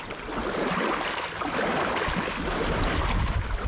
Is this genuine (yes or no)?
yes